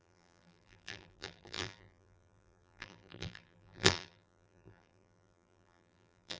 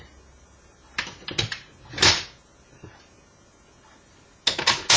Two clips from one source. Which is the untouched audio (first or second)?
second